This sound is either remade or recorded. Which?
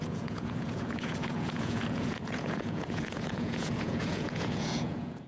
remade